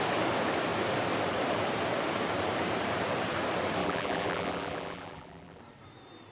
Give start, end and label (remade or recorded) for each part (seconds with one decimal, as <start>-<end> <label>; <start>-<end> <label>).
0.0-3.8 recorded; 3.8-5.6 remade; 5.6-6.3 recorded